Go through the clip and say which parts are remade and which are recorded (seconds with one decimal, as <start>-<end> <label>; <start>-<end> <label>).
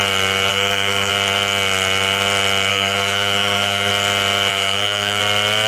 0.0-0.5 recorded; 0.5-1.1 remade; 1.1-2.7 recorded; 2.7-3.9 remade; 3.9-4.5 recorded; 4.5-5.2 remade; 5.2-5.7 recorded